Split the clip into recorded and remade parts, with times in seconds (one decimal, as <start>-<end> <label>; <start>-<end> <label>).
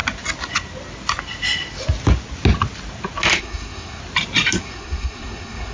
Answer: 0.0-3.4 recorded; 3.4-4.0 remade; 4.0-4.6 recorded; 4.6-5.7 remade